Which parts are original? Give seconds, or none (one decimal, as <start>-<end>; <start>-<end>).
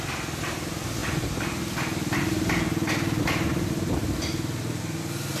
0.0-5.4